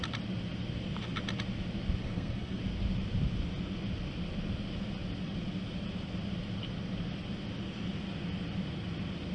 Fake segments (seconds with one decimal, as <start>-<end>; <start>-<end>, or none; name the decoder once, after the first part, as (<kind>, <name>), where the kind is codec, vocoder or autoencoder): 2.0-2.6 (codec, SNAC)